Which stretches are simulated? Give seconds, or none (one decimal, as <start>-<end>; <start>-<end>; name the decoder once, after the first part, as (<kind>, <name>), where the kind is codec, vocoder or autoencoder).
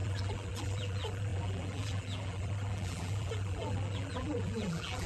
0.0-5.1 (vocoder, BigVGAN v2)